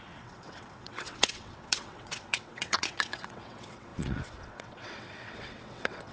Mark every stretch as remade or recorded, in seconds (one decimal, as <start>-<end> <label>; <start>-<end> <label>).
0.0-6.1 remade